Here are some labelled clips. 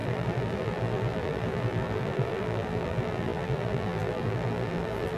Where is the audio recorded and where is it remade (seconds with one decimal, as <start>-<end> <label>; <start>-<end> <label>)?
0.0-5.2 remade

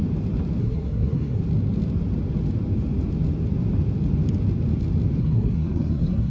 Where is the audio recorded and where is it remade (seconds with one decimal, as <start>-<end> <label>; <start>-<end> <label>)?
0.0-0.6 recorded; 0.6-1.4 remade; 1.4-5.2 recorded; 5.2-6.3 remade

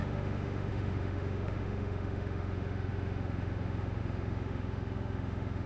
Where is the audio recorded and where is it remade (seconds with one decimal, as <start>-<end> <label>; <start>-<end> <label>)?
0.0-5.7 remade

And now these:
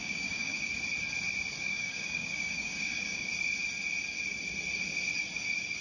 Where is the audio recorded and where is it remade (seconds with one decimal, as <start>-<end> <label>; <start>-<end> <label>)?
0.0-0.7 remade; 0.7-1.6 recorded; 1.6-3.3 remade; 3.3-5.8 recorded